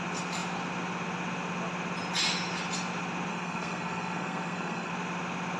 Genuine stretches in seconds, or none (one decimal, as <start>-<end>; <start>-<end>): 0.0-3.3; 4.9-5.6